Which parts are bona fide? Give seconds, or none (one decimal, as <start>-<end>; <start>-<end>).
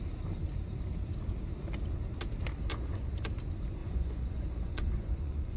0.0-2.7; 3.3-3.8